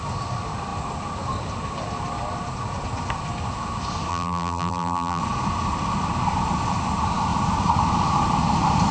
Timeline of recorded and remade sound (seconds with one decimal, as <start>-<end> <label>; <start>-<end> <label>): 0.0-4.1 recorded; 4.1-5.2 remade; 5.2-8.9 recorded